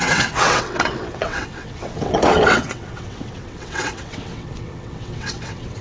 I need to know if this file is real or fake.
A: fake